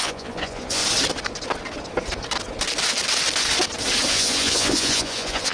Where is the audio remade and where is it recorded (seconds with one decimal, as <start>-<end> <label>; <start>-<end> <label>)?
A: 0.0-0.8 remade; 0.8-4.1 recorded; 4.1-5.5 remade